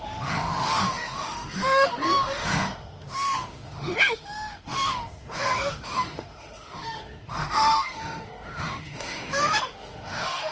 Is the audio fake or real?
fake